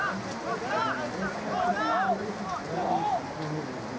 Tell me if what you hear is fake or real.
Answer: real